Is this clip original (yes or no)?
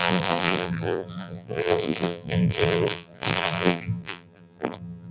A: no